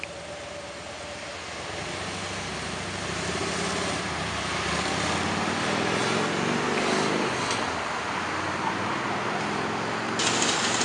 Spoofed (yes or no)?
no